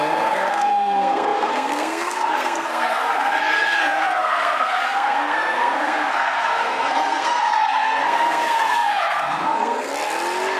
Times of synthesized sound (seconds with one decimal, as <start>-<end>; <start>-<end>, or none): 0.0-9.9